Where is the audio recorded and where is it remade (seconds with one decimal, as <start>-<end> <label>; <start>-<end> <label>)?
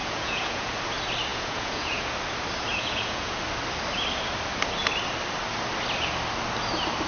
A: 0.0-0.7 remade; 0.7-1.3 recorded; 1.3-2.1 remade; 2.1-2.7 recorded; 2.7-3.4 remade; 3.4-7.1 recorded